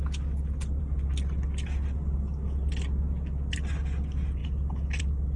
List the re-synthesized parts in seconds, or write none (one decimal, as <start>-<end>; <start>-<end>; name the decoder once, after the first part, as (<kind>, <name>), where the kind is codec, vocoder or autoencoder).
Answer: none